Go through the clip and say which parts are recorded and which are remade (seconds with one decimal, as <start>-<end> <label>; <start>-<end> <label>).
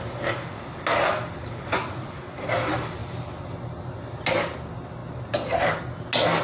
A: 0.0-1.4 recorded; 1.4-2.2 remade; 2.2-6.4 recorded